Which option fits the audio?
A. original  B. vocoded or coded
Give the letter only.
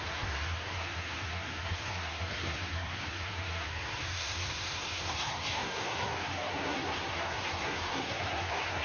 B